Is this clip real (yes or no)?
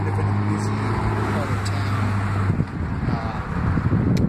yes